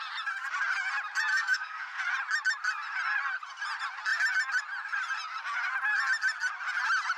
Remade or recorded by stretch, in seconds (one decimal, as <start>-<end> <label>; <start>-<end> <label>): 0.0-1.3 recorded; 1.3-2.0 remade; 2.0-7.2 recorded